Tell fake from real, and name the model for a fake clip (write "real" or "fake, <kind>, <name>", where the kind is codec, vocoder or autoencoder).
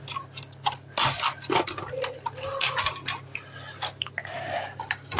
real